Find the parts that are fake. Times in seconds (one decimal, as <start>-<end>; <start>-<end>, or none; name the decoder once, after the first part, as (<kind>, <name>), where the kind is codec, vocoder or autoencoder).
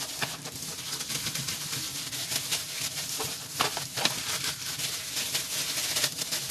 none